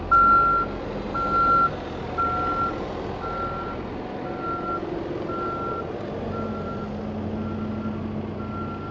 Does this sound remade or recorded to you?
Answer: recorded